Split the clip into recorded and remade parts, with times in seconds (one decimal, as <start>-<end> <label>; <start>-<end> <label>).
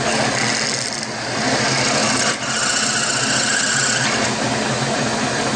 0.0-5.6 recorded